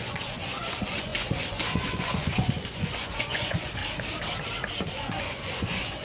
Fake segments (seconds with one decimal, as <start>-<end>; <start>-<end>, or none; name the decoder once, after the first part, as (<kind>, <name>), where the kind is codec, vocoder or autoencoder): 0.0-3.8 (vocoder, Vocos); 4.8-6.0